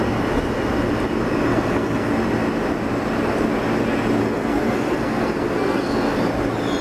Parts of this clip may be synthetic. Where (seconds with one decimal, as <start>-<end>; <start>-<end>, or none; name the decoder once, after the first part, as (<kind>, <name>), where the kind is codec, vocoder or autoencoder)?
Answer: 1.5-2.1 (codec, SNAC); 4.2-6.2